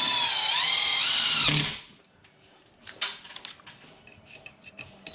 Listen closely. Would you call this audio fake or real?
real